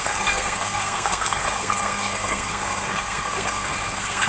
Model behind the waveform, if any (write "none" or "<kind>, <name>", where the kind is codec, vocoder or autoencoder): codec, SNAC